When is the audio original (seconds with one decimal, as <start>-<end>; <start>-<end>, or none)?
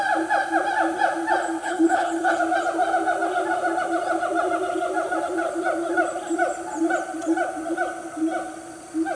0.0-1.6; 2.4-9.2